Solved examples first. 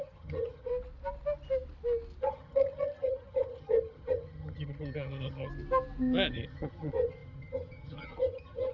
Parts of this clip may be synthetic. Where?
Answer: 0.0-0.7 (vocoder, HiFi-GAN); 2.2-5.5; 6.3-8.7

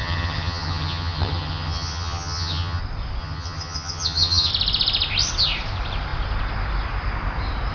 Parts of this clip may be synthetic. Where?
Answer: 0.0-2.8 (vocoder, HiFi-GAN); 3.2-4.5

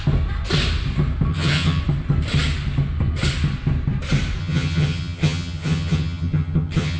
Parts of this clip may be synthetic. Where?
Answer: 1.3-1.8 (vocoder, HiFi-GAN); 4.4-7.0